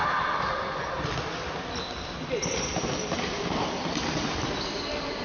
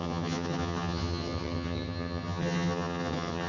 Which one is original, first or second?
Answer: first